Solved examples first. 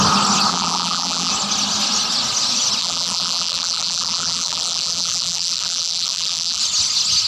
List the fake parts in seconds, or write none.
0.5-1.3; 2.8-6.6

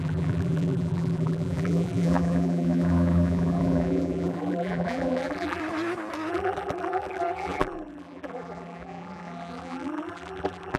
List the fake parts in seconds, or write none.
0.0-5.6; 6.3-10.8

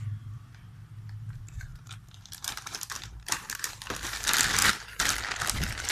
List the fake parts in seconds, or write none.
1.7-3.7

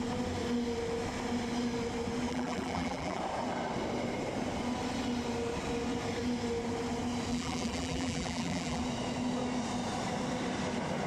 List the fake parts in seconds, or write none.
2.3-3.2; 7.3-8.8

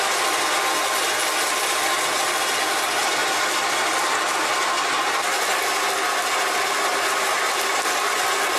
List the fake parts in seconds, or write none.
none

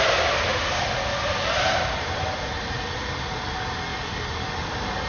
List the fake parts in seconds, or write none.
3.9-5.1